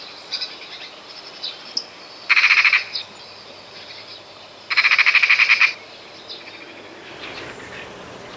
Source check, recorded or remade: recorded